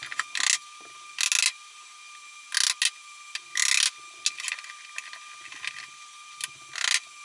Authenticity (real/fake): real